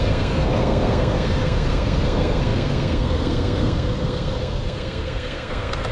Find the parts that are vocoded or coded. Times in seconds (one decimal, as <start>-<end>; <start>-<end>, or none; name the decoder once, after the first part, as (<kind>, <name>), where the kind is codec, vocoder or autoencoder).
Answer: 0.0-5.9 (codec, SNAC)